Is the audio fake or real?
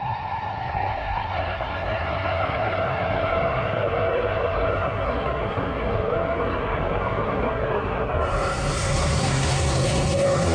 fake